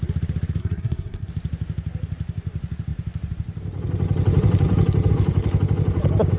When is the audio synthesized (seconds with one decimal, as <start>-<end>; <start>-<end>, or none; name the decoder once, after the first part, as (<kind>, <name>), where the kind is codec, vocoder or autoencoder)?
0.6-1.3 (codec, SNAC)